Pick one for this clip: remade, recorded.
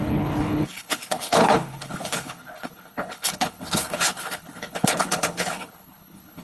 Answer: remade